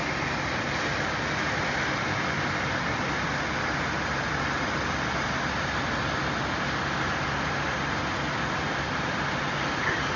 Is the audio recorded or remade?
recorded